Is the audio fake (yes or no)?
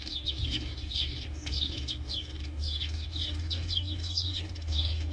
yes